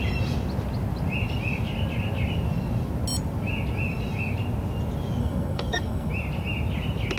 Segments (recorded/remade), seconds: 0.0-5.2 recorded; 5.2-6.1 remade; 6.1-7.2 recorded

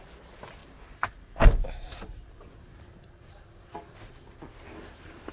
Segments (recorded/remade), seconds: 0.0-0.6 recorded; 0.6-3.8 remade; 3.8-5.3 recorded

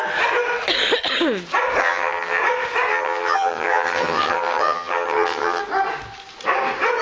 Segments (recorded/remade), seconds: 0.0-1.8 recorded; 1.8-2.4 remade; 2.4-2.9 recorded; 2.9-5.6 remade; 5.6-7.0 recorded